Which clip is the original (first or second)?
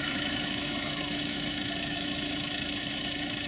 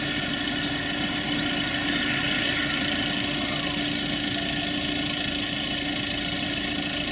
second